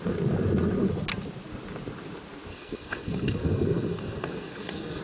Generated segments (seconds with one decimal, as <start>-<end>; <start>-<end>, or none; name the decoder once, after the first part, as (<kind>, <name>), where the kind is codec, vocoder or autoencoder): 2.5-5.0 (codec, SNAC)